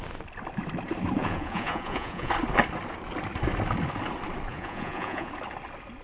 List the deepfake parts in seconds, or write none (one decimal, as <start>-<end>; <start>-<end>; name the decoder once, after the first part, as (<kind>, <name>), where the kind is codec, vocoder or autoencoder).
1.2-2.3 (vocoder, Vocos); 4.5-5.3

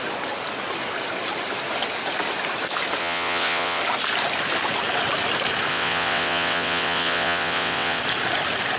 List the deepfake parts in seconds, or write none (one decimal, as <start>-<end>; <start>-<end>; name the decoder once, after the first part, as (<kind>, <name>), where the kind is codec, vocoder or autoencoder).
3.0-3.8 (vocoder, WaveNeXt); 5.7-8.0

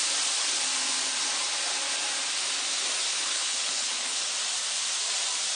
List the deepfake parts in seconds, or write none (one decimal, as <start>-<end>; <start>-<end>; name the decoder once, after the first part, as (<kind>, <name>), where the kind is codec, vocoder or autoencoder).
3.1-4.3 (codec, HILCodec)

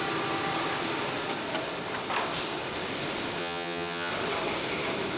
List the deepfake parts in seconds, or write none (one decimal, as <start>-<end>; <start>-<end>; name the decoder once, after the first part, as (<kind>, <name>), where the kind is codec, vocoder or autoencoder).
3.4-4.1 (vocoder, HiFi-GAN)

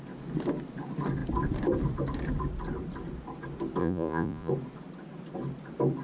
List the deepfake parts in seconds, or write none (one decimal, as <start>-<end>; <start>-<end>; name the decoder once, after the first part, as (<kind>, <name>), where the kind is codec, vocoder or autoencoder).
3.8-4.5 (vocoder, Vocos)

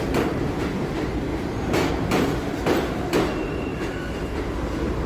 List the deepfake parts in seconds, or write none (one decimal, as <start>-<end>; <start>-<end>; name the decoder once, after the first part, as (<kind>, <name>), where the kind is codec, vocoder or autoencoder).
none

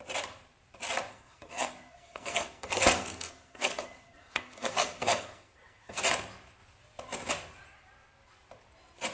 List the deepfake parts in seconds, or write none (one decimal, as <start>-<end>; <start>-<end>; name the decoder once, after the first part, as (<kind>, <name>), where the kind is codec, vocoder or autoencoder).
1.1-6.0 (codec, SNAC)